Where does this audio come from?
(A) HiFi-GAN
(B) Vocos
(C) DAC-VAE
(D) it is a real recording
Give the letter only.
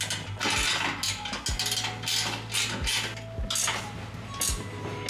D